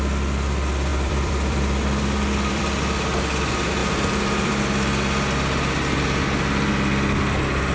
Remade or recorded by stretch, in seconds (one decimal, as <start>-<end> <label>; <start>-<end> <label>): 0.0-0.9 recorded; 0.9-2.6 remade; 2.6-3.8 recorded; 3.8-4.5 remade; 4.5-7.7 recorded